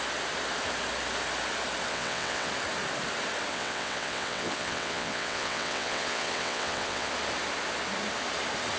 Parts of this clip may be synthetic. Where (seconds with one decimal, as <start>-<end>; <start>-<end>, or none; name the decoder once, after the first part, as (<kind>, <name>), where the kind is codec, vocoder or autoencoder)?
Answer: 1.9-2.5 (vocoder, WaveNeXt); 3.5-7.1